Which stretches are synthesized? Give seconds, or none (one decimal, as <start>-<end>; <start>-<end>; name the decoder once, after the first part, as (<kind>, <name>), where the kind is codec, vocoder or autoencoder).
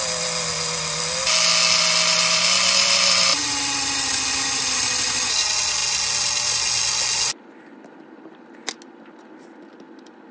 none